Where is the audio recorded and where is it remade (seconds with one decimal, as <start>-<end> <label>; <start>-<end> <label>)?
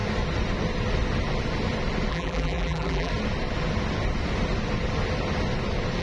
0.0-2.1 recorded; 2.1-3.1 remade; 3.1-6.0 recorded